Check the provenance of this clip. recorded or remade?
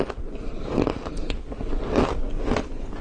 recorded